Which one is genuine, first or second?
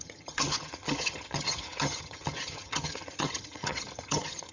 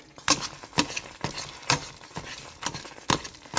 second